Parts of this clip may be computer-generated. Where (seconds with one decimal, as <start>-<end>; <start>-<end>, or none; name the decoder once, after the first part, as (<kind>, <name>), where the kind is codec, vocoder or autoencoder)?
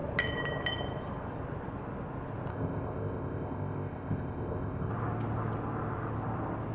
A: 2.5-4.9 (codec, ZipCodec)